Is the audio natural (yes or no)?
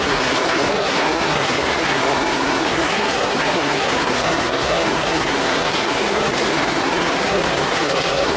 no